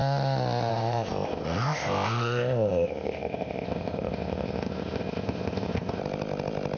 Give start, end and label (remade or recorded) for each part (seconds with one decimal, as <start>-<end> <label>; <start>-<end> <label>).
0.0-0.7 recorded; 0.7-6.0 remade; 6.0-6.8 recorded